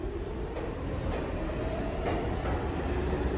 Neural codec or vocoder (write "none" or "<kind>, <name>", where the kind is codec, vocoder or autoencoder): none